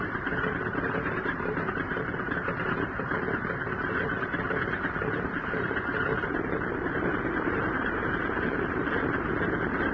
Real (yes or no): no